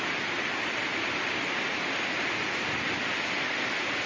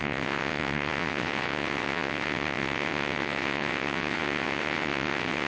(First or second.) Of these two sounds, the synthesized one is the second